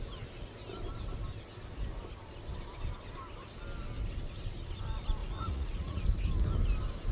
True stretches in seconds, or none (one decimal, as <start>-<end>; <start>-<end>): 0.0-5.2; 6.0-7.1